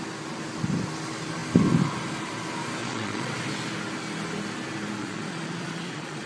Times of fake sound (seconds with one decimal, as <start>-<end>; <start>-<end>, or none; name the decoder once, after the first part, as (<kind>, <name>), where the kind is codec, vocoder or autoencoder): 2.8-3.3 (vocoder, Vocos); 5.0-6.3